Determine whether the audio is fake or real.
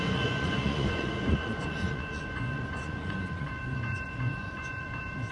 fake